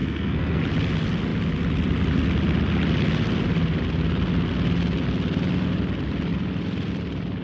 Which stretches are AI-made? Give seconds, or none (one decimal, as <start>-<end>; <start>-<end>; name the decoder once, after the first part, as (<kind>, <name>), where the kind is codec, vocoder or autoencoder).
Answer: 0.0-0.6 (codec, SNAC)